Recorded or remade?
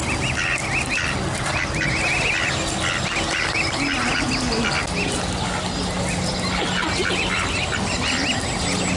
recorded